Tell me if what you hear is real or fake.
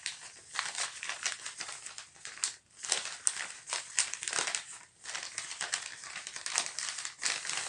real